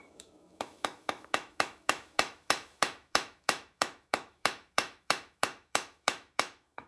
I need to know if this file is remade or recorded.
remade